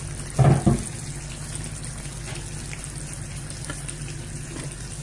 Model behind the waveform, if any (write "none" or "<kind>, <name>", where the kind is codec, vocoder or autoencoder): none